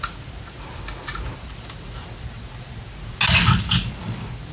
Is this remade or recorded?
recorded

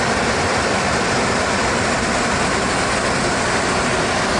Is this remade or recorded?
recorded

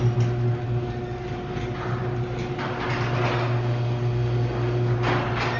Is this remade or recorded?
recorded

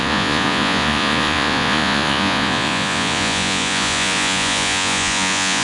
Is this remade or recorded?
remade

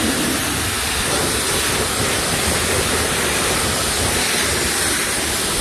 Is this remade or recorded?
recorded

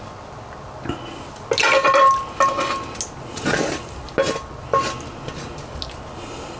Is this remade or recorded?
recorded